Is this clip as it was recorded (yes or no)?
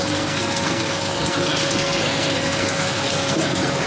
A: no